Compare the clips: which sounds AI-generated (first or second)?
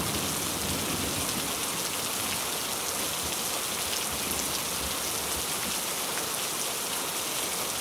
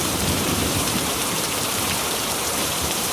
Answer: second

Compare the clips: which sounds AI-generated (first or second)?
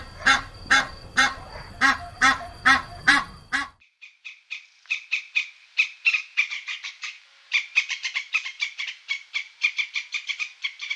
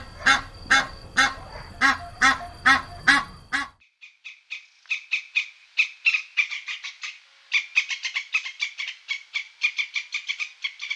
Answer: first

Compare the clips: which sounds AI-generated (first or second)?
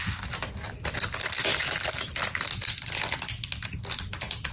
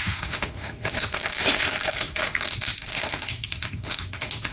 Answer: second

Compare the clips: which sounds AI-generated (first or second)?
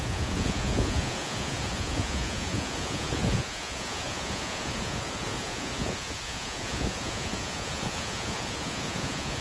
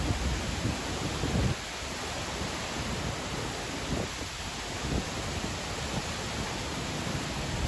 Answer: first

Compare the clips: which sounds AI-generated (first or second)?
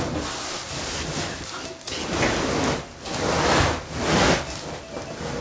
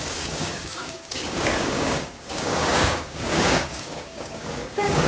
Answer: second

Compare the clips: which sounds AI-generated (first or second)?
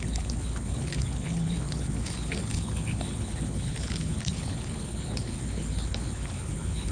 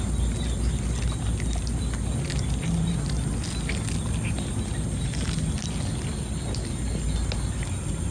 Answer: first